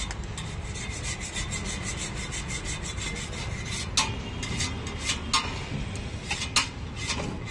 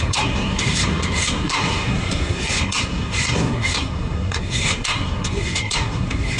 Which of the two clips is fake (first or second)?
second